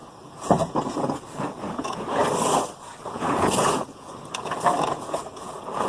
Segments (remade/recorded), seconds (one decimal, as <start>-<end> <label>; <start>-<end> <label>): 0.0-2.2 remade; 2.2-2.8 recorded; 2.8-5.9 remade